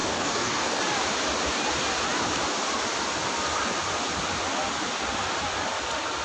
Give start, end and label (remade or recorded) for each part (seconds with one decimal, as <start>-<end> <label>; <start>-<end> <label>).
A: 0.0-0.8 remade; 0.8-6.2 recorded